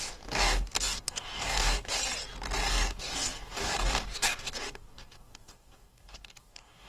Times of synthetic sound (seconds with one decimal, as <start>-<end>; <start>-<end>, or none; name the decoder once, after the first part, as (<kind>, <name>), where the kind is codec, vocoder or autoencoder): 0.0-2.0 (codec, DAC); 2.7-6.9